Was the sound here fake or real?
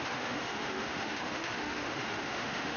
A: fake